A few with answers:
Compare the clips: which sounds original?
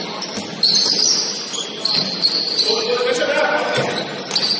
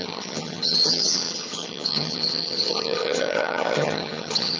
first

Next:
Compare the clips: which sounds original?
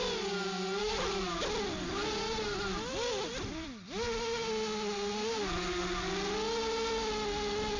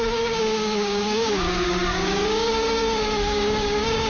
first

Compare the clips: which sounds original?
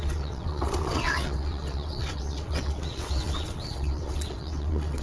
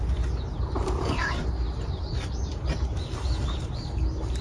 second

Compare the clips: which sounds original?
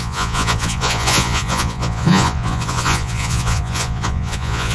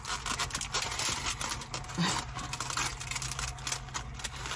second